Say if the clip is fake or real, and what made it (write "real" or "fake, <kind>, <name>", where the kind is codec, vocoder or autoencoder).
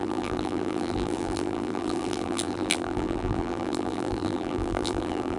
fake, vocoder, BigVGAN v2